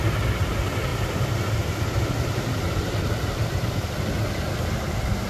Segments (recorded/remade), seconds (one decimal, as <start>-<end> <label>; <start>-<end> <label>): 0.0-5.3 recorded